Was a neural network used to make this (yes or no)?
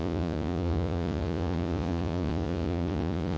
yes